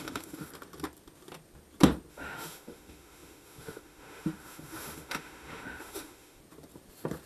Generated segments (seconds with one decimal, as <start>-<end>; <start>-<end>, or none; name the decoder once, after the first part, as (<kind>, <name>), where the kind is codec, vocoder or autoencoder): 0.0-0.5 (autoencoder, DAC-VAE); 2.1-6.4